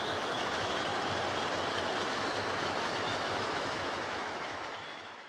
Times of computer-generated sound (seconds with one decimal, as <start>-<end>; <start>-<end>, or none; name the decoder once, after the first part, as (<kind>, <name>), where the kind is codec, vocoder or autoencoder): 0.0-0.9 (autoencoder, DAC-VAE); 2.1-5.3